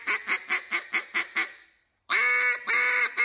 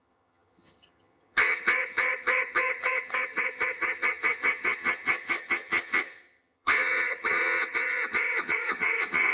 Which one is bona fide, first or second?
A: first